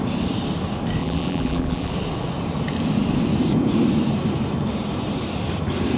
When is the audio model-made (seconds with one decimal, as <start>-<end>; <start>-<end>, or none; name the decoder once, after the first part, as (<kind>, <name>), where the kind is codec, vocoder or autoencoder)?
1.0-1.9 (vocoder, BigVGAN v2)